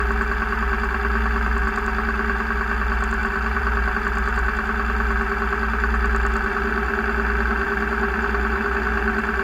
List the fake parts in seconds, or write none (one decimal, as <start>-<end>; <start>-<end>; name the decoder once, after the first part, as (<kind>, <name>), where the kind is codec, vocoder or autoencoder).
3.2-3.9 (vocoder, BigVGAN v2)